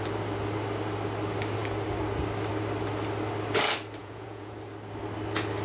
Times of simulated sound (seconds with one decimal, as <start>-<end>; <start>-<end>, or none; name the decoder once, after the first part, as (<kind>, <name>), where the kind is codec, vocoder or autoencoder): 4.0-4.5 (vocoder, Vocos)